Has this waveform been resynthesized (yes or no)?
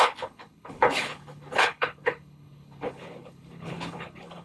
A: yes